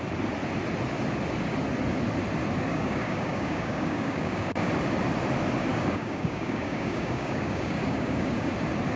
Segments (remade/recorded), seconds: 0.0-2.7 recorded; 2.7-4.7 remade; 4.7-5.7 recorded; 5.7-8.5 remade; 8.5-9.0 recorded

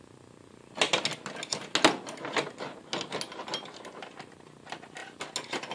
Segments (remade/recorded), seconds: 0.0-5.7 recorded